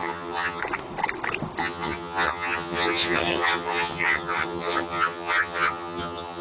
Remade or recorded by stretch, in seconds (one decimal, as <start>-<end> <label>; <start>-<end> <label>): 0.0-0.6 remade; 0.6-1.6 recorded; 1.6-6.4 remade